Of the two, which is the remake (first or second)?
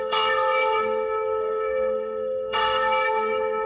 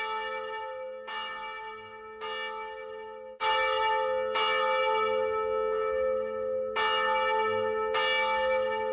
first